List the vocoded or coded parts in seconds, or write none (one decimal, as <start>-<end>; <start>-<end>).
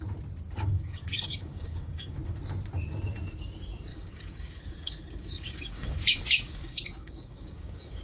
0.7-2.2; 3.9-8.0